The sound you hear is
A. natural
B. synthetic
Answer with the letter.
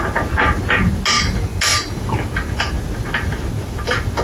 A